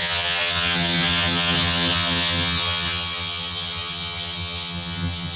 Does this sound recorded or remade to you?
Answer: remade